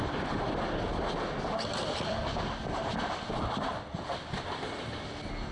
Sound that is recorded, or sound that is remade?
recorded